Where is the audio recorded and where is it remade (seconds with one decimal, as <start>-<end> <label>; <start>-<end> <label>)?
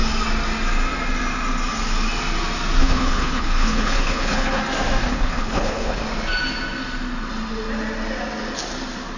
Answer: 0.0-2.8 recorded; 2.8-4.6 remade; 4.6-5.0 recorded; 5.0-6.0 remade; 6.0-9.2 recorded